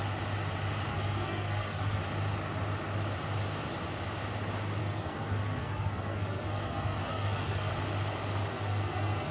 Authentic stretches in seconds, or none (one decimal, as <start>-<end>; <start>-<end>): 0.0-0.9; 2.0-4.8; 7.7-8.5

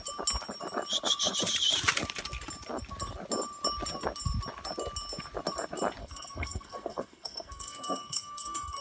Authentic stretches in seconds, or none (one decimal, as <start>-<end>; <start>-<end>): 0.0-6.0